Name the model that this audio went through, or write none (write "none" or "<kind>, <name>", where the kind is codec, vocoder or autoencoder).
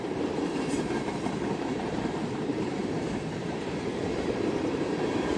vocoder, BigVGAN v2